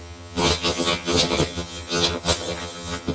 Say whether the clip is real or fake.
fake